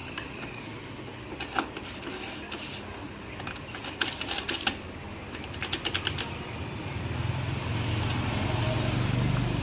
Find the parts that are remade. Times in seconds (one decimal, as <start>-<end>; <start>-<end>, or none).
none